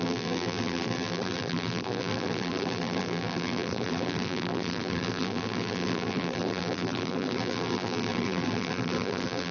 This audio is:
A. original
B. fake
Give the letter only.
B